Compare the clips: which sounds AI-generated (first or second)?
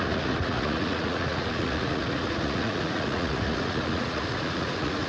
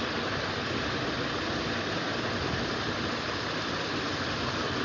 first